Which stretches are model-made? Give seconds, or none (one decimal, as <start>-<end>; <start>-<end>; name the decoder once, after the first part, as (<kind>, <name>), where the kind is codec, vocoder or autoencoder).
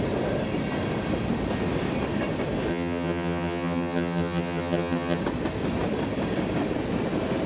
2.7-5.2 (vocoder, HiFi-GAN)